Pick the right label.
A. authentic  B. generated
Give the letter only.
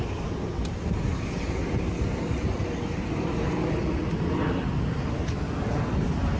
A